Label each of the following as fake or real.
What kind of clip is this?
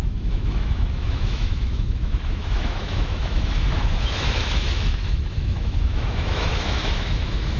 fake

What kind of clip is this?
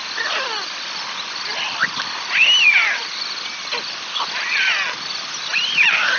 real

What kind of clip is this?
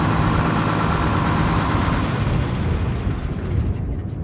real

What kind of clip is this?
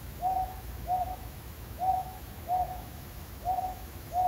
fake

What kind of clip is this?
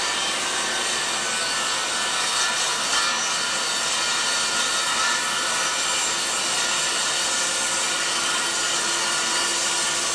real